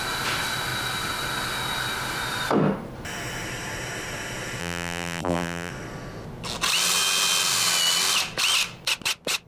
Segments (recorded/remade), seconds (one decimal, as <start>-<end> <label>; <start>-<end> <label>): 0.0-4.6 recorded; 4.6-5.7 remade; 5.7-9.5 recorded